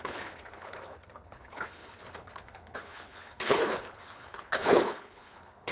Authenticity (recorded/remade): remade